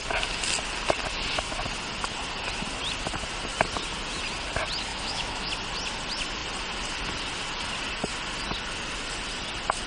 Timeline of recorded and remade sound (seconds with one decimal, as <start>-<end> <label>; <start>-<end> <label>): 0.0-4.9 recorded; 4.9-5.5 remade; 5.5-9.9 recorded